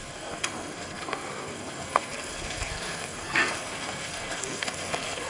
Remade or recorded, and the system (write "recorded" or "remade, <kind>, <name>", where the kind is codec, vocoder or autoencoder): remade, codec, SNAC